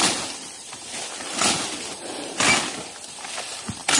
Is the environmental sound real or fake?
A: real